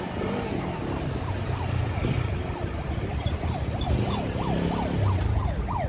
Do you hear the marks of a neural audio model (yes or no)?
no